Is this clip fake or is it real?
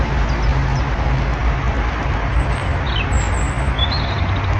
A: real